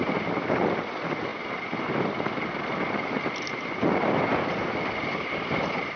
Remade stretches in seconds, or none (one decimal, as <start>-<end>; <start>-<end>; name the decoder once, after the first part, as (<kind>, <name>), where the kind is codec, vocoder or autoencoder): none